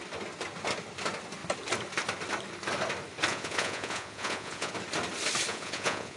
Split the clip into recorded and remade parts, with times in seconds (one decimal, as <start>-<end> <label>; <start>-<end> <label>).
0.0-3.3 recorded; 3.3-4.7 remade; 4.7-5.5 recorded; 5.5-6.2 remade